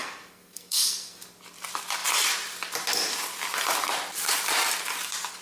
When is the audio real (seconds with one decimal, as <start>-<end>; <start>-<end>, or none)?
1.2-5.4